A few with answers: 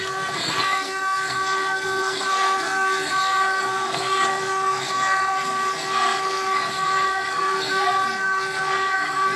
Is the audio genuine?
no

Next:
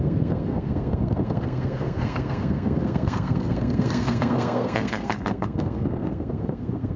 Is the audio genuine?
no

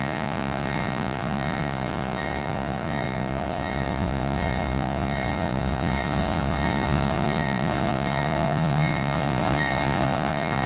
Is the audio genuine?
no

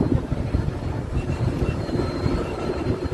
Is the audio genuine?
no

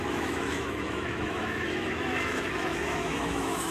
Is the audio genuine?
no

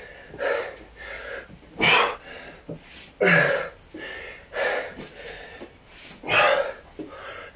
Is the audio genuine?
yes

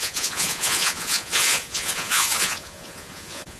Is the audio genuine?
no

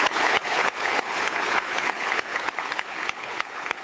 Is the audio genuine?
no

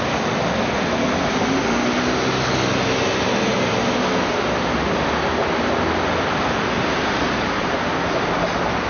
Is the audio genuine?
yes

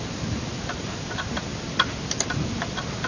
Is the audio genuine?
yes